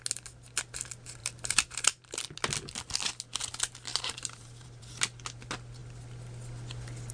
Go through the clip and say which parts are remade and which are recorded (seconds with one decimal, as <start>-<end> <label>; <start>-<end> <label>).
0.0-1.2 recorded; 1.2-2.2 remade; 2.2-3.9 recorded; 3.9-4.8 remade; 4.8-7.1 recorded